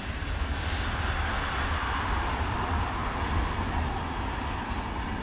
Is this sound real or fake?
real